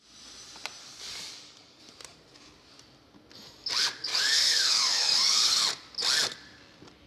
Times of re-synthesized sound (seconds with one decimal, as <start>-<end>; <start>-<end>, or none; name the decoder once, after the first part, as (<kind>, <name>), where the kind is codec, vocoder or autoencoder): 0.8-1.8 (codec, DAC); 4.1-5.6